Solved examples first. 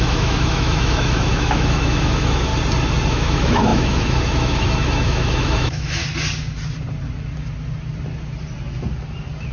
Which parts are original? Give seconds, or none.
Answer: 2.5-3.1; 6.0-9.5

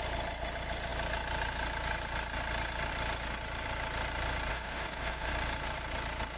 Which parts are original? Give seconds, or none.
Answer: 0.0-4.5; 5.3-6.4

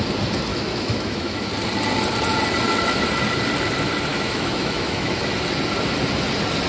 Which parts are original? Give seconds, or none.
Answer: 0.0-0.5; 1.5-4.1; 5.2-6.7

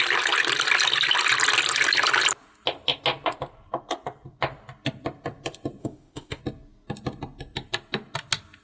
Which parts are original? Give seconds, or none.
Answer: 0.0-5.8; 6.4-8.6

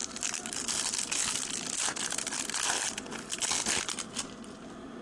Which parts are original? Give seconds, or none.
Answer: 0.0-5.0